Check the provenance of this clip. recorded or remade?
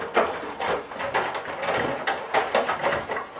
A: recorded